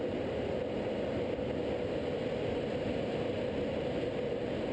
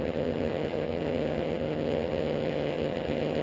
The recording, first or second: first